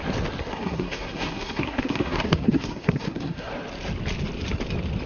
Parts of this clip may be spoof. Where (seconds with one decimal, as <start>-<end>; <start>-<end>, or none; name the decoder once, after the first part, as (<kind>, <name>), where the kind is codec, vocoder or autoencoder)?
0.4-3.5 (codec, SNAC)